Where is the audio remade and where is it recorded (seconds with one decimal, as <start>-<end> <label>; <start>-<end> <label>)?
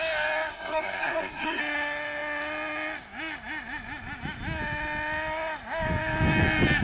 0.0-0.5 recorded; 0.5-1.6 remade; 1.6-6.8 recorded